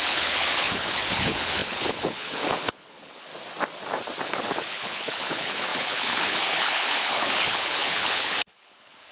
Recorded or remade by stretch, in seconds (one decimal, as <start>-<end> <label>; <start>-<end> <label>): 0.0-3.3 remade; 3.3-4.2 recorded; 4.2-9.1 remade